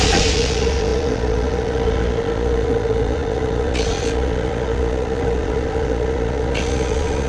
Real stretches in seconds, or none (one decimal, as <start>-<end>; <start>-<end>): none

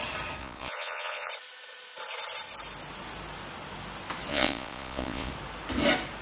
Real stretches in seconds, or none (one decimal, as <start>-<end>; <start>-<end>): 0.0-0.4; 1.3-4.3; 5.3-6.2

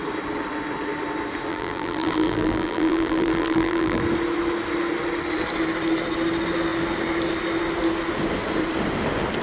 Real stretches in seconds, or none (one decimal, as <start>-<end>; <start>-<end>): 0.0-1.5; 4.0-9.4

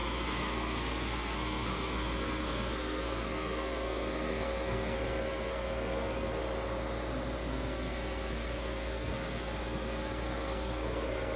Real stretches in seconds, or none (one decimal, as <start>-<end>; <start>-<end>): 6.4-7.5

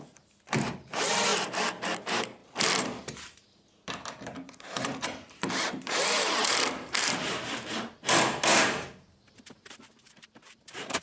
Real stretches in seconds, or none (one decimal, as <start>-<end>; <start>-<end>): 1.3-2.0

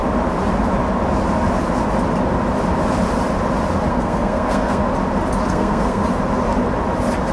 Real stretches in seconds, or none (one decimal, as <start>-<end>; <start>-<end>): 0.0-3.9; 4.8-5.5; 6.0-7.3

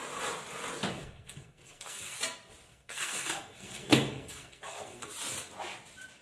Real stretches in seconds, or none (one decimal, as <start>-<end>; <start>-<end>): 0.0-0.9; 2.2-2.7; 5.1-6.2

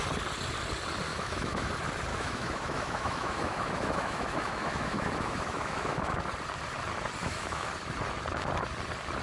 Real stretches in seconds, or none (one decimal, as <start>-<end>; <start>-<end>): 0.0-1.1; 1.7-2.1; 6.2-7.2; 7.7-9.2